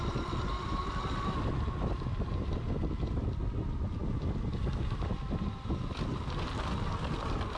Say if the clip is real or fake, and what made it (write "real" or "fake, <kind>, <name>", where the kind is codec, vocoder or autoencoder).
real